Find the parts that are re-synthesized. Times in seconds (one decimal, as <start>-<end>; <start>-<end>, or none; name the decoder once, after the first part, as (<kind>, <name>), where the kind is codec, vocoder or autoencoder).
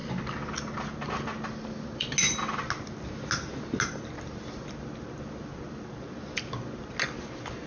none